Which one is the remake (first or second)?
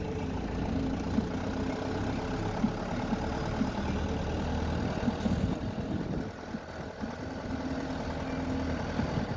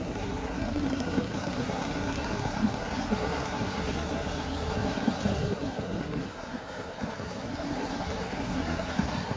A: second